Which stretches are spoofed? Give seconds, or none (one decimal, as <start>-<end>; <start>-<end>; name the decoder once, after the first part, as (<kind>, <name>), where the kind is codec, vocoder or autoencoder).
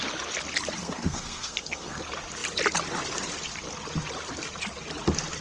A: 0.8-2.0 (codec, SNAC)